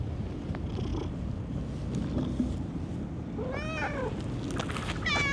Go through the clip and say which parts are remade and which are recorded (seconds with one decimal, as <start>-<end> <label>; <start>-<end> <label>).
0.0-5.3 recorded